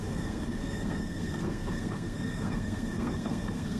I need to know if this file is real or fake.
fake